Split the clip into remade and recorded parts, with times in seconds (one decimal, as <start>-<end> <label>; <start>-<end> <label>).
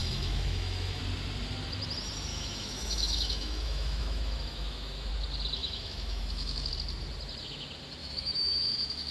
0.0-1.0 remade; 1.0-2.3 recorded; 2.3-5.1 remade; 5.1-5.6 recorded; 5.6-6.7 remade; 6.7-8.0 recorded; 8.0-9.1 remade